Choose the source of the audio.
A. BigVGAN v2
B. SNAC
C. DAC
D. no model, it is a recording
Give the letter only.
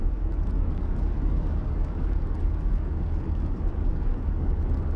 C